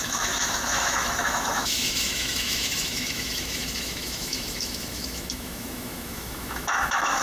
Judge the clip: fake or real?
fake